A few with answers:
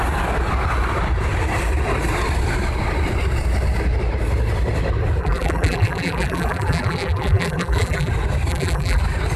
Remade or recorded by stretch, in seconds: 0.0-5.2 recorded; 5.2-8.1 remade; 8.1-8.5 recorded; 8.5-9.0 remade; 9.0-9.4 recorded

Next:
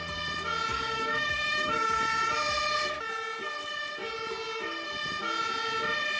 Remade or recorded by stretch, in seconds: 0.0-0.7 recorded; 0.7-2.0 remade; 2.0-6.2 recorded

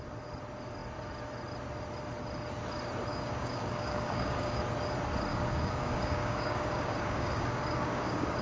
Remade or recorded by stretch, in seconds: 0.0-3.1 recorded; 3.1-4.6 remade; 4.6-5.3 recorded; 5.3-8.4 remade

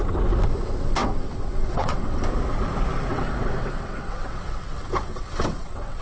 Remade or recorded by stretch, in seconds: 0.0-1.0 recorded; 1.0-2.2 remade; 2.2-3.1 recorded; 3.1-6.0 remade

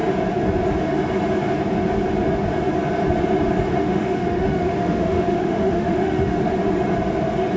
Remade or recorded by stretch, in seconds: 0.0-3.8 recorded; 3.8-6.4 remade; 6.4-7.6 recorded

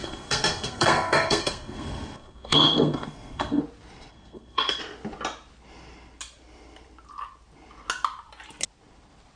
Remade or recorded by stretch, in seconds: 0.0-3.6 remade; 3.6-4.1 recorded; 4.1-4.8 remade; 4.8-9.4 recorded